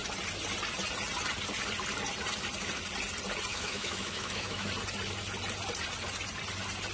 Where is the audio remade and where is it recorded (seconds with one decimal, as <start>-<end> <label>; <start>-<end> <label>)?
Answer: 0.0-3.5 recorded; 3.5-4.7 remade; 4.7-6.9 recorded